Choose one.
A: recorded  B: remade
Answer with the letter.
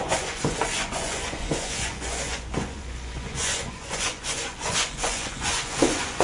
B